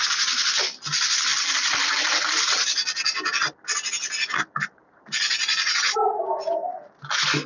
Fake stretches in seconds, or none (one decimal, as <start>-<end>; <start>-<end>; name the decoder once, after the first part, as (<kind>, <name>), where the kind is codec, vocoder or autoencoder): 1.3-3.4 (vocoder, BigVGAN v2); 6.6-7.5